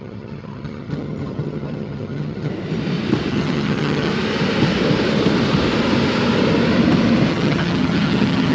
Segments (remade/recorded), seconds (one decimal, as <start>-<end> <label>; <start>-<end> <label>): 0.0-2.5 remade; 2.5-3.3 recorded; 3.3-4.1 remade; 4.1-7.3 recorded; 7.3-8.5 remade